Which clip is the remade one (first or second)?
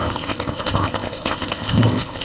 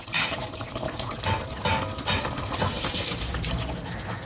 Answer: first